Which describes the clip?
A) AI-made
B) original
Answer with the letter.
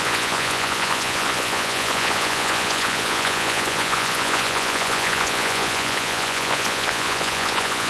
A